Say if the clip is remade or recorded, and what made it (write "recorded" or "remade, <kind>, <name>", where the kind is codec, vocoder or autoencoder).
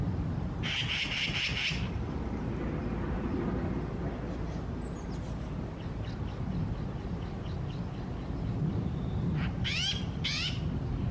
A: recorded